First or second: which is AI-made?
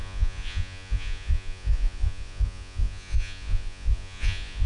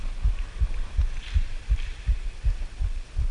first